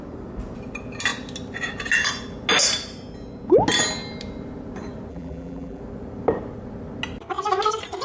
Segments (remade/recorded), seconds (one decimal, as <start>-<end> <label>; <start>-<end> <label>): 0.0-5.1 recorded; 5.1-5.8 remade; 5.8-8.0 recorded